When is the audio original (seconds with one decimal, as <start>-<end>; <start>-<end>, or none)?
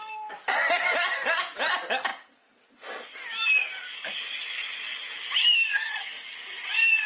0.0-7.1